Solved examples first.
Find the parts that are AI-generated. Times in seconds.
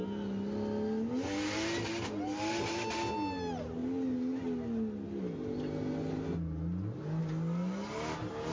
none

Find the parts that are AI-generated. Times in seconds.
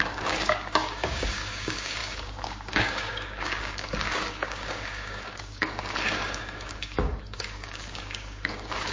0.0-8.9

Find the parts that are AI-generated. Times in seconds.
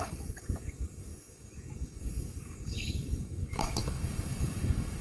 0.0-5.0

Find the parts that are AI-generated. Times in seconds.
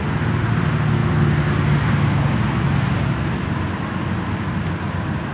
none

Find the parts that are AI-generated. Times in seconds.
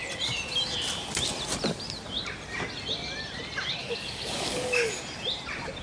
3.8-5.0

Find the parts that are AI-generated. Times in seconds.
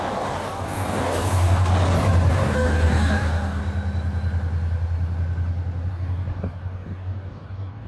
0.0-1.7; 2.3-3.6; 5.9-7.9